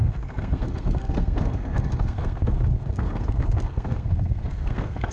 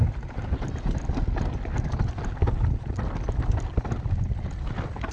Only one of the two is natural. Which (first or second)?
second